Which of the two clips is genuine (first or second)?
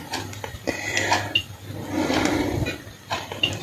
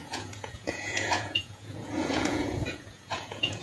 first